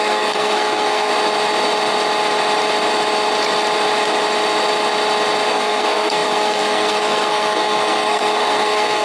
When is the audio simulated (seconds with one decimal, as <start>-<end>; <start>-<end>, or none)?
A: 0.0-1.1; 5.5-9.0